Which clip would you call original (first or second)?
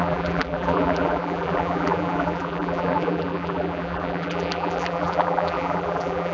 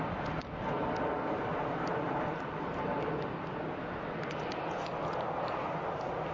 second